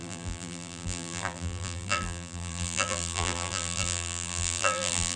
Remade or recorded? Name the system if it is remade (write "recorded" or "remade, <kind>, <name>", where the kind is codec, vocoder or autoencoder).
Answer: remade, vocoder, BigVGAN v2